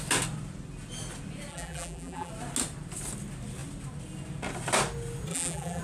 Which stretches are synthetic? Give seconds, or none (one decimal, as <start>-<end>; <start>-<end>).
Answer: 1.5-2.3; 5.3-5.8